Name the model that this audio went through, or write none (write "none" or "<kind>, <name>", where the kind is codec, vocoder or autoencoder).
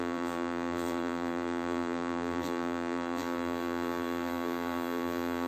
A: vocoder, BigVGAN v2